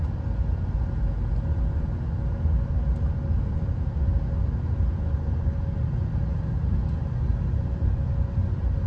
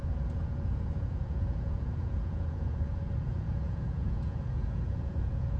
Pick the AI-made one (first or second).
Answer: second